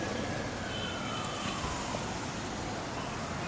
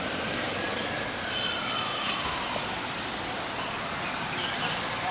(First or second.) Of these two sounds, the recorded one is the first